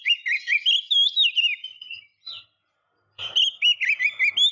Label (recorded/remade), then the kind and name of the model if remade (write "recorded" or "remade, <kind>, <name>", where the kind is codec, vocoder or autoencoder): recorded